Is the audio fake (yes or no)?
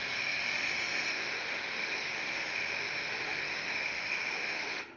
yes